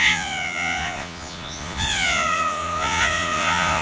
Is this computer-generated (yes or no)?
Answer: yes